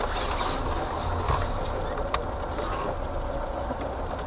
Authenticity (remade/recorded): recorded